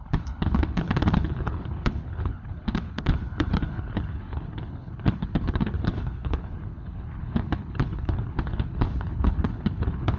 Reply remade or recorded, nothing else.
remade